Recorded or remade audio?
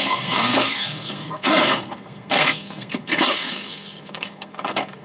remade